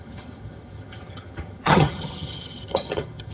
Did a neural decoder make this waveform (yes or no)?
yes